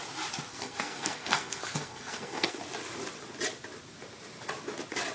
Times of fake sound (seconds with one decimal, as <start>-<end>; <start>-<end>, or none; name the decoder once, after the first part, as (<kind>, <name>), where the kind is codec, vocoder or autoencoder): 0.5-2.6 (codec, SNAC)